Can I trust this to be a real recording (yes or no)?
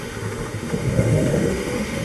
no